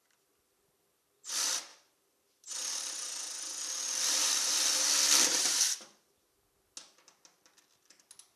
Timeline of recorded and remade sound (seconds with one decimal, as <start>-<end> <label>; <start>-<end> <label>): 0.0-1.7 recorded; 1.7-6.2 remade; 6.2-8.4 recorded